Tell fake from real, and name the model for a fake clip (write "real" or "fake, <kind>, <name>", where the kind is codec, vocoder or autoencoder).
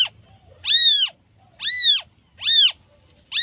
real